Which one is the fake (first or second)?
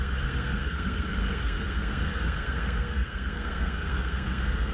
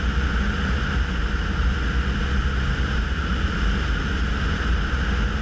first